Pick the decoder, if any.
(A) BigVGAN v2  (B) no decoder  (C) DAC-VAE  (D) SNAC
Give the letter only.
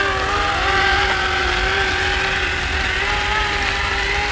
B